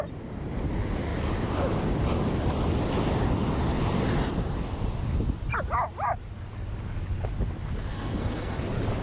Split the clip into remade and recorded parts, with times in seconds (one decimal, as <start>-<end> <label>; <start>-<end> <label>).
0.0-7.9 recorded; 7.9-8.6 remade; 8.6-9.0 recorded